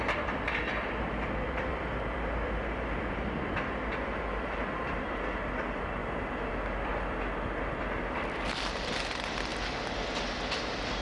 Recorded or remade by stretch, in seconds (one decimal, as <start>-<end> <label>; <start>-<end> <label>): 0.0-6.0 remade; 6.0-6.5 recorded; 6.5-6.9 remade; 6.9-7.7 recorded; 7.7-9.5 remade; 9.5-10.6 recorded; 10.6-11.0 remade